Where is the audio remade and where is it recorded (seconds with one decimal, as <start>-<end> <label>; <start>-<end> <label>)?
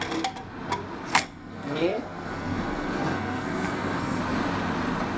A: 0.0-1.1 recorded; 1.1-4.2 remade; 4.2-5.2 recorded